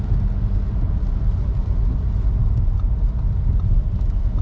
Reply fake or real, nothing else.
real